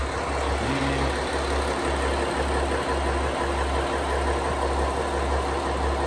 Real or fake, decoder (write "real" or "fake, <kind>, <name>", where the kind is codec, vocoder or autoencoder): real